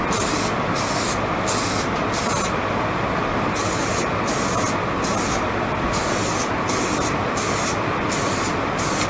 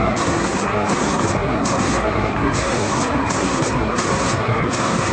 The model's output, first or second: second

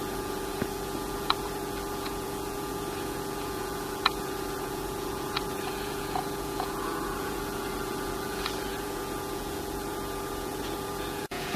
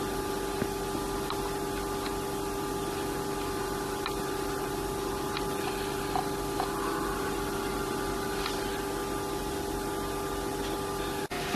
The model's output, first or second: first